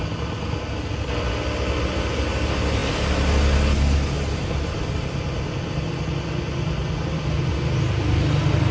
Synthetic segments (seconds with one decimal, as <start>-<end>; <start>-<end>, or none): none